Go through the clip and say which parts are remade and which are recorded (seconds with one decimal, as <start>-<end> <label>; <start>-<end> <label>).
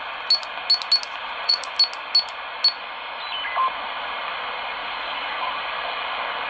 0.0-1.2 recorded; 1.2-1.7 remade; 1.7-4.8 recorded; 4.8-5.6 remade; 5.6-6.5 recorded